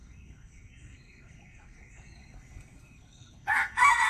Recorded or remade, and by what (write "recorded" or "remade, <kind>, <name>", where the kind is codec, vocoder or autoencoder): remade, codec, SNAC